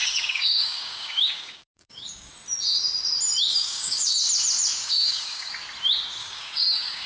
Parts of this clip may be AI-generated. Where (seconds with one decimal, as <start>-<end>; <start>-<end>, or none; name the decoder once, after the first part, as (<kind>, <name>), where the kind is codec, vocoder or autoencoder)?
0.0-2.3 (codec, DAC); 3.5-4.1; 4.8-5.5; 6.2-7.1